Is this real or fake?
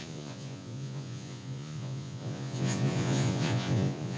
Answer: fake